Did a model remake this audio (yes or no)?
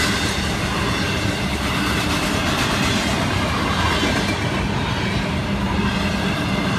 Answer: no